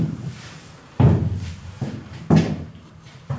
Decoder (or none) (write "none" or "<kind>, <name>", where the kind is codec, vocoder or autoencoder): vocoder, BigVGAN v2